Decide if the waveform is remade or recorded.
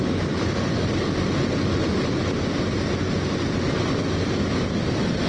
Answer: recorded